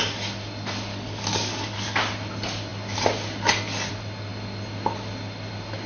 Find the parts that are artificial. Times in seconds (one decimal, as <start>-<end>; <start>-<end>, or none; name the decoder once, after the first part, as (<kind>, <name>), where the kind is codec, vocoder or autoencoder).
0.9-2.0 (codec, DAC)